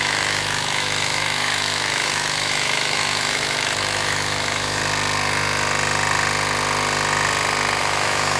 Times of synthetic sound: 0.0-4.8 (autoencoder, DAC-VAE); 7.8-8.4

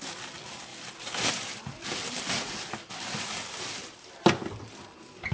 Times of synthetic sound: none